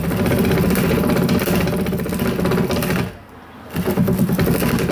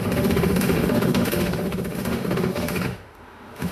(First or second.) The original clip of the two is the first